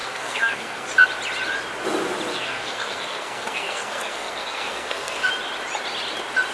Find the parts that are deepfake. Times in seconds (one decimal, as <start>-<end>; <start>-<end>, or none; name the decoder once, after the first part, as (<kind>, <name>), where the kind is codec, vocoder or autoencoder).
0.0-0.9 (codec, SNAC); 2.3-5.3